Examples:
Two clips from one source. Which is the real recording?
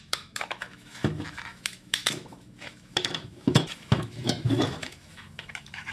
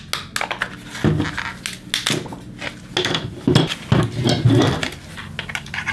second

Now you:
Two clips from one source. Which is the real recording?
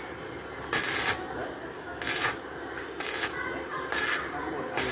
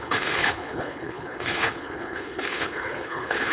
first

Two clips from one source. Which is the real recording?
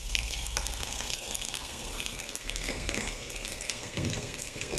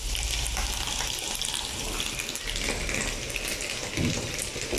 second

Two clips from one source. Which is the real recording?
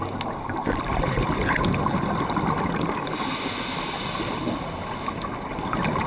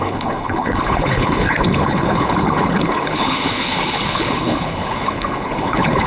first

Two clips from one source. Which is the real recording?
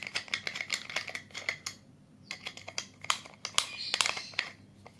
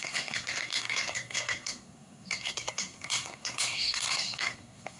first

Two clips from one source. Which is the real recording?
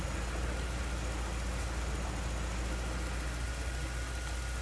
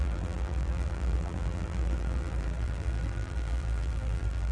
first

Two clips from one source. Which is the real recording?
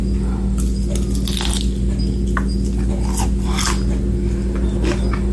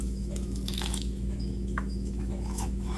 first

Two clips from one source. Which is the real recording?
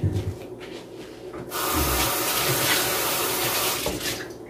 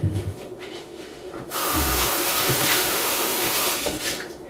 first